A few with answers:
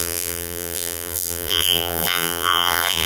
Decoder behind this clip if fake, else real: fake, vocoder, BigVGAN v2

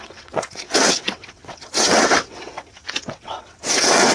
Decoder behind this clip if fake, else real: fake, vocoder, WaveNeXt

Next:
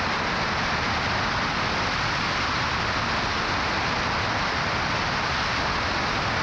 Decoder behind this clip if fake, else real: real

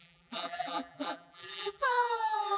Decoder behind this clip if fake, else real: fake, vocoder, BigVGAN v2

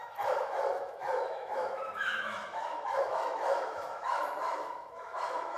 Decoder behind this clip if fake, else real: fake, autoencoder, DAC-VAE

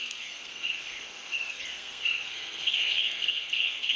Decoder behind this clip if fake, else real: fake, codec, SNAC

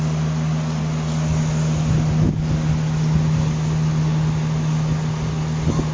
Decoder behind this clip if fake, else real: real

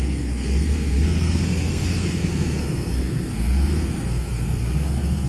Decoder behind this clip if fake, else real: fake, codec, SNAC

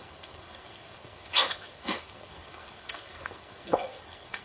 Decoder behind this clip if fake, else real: fake, codec, SNAC